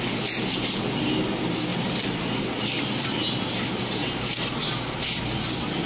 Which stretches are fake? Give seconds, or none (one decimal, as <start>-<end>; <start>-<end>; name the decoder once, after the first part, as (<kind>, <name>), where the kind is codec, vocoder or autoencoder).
none